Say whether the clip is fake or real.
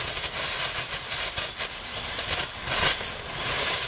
real